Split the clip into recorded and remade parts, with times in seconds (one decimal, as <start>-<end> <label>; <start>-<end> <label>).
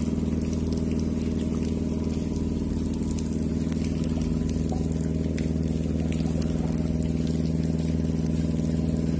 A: 0.0-9.2 recorded